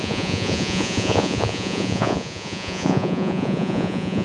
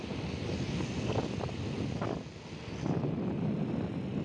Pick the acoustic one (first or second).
second